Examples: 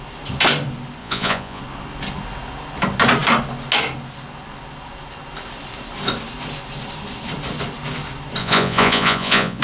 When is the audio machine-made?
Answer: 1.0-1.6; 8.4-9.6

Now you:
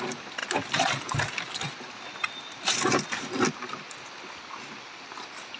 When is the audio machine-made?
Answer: none

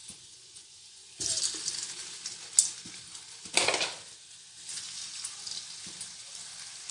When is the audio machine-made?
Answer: 0.0-1.1

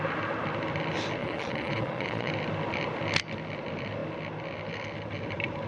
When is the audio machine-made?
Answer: 1.2-2.3

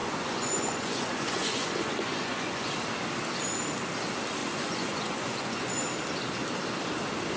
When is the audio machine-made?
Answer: 0.0-2.7; 4.4-5.8

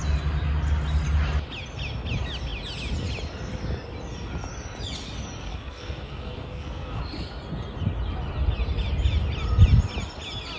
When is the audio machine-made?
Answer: 5.4-7.0

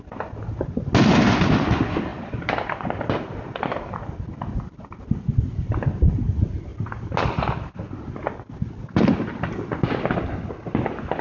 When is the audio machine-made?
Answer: none

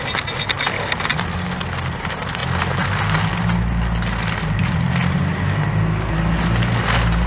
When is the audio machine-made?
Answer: none